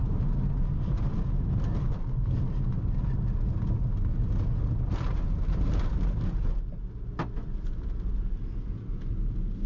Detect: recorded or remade recorded